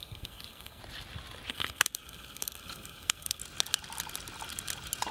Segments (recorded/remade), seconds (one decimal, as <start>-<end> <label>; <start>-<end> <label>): 0.0-0.8 remade; 0.8-1.5 recorded; 1.5-3.4 remade; 3.4-5.1 recorded